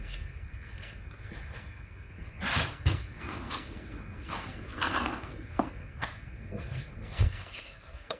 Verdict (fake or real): fake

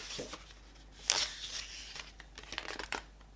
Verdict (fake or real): real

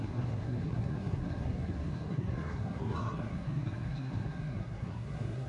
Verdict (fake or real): fake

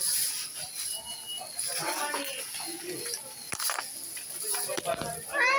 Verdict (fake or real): real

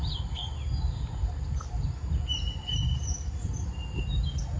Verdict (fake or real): real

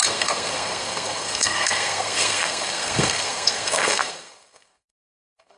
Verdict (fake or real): fake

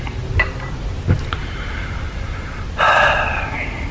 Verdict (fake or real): real